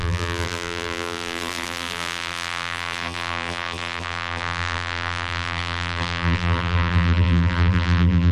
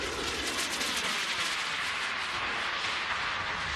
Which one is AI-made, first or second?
first